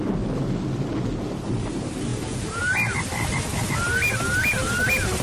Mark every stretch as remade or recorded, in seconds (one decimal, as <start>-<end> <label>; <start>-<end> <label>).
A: 0.0-2.1 recorded; 2.1-2.6 remade; 2.6-5.2 recorded